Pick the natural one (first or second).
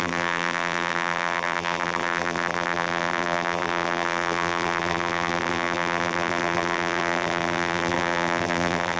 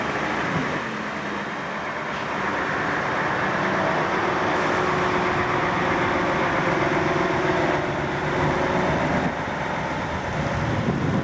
second